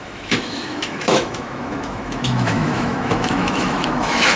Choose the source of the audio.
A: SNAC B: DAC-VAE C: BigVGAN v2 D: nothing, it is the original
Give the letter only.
B